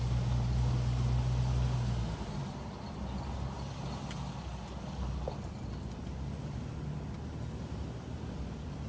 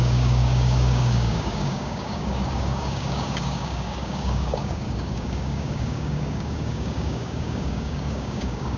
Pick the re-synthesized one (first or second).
second